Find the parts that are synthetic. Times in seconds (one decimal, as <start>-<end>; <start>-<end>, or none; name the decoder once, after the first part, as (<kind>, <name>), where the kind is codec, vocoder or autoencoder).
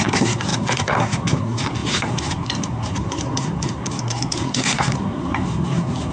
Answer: 0.0-6.1 (codec, SNAC)